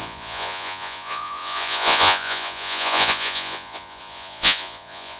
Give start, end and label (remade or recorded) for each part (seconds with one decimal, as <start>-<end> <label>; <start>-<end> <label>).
0.0-5.2 remade